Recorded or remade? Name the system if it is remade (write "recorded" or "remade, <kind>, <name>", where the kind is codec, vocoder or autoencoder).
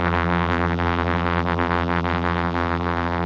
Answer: remade, vocoder, BigVGAN v2